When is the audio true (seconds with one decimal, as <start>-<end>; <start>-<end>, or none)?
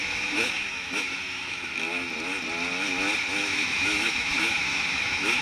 1.7-3.3